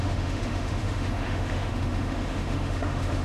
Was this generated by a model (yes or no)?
yes